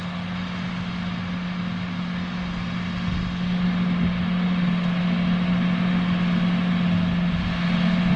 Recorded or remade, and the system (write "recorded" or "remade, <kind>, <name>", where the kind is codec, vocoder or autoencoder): recorded